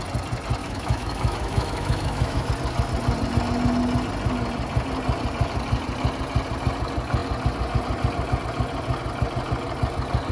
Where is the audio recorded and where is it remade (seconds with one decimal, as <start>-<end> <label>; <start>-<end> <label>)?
0.0-0.6 recorded; 0.6-2.5 remade; 2.5-10.3 recorded